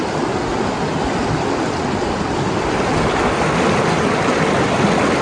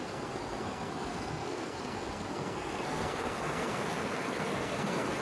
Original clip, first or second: first